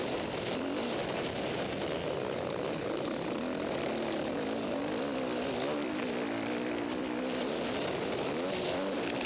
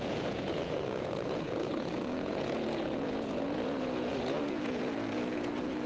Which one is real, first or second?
first